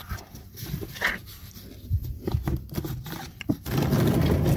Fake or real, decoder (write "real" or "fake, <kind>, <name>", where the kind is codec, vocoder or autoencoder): fake, vocoder, BigVGAN v2